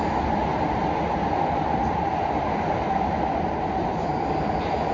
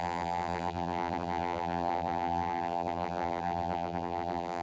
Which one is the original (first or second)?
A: first